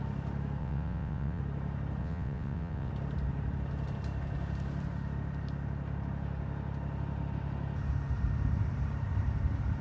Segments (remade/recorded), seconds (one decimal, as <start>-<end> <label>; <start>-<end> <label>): 0.0-0.6 recorded; 0.6-1.4 remade; 1.4-2.0 recorded; 2.0-2.9 remade; 2.9-9.8 recorded